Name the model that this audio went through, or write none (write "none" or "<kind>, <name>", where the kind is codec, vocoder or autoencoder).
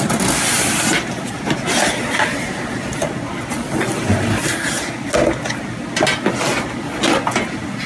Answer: none